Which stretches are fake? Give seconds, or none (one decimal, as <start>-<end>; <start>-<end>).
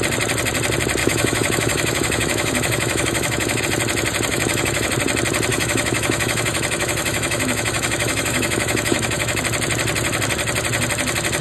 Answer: 1.0-3.6; 4.3-4.9; 5.5-9.4